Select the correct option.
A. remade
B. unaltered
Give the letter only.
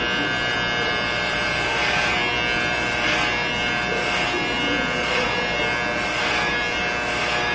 B